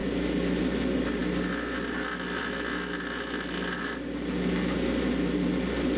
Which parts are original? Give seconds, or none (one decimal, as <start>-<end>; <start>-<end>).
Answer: 0.0-6.0